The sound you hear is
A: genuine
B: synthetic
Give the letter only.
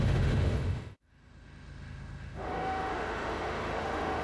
B